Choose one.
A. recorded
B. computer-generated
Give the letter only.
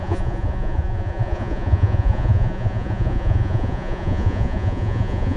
B